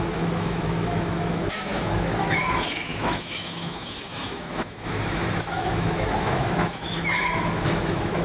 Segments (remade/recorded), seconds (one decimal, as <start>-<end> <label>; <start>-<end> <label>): 0.0-8.2 remade